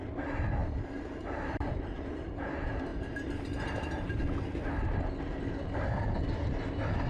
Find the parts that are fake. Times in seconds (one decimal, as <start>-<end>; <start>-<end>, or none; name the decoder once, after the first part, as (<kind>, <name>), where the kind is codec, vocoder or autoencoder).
2.9-4.2 (vocoder, BigVGAN v2)